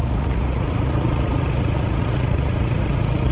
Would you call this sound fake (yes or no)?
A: yes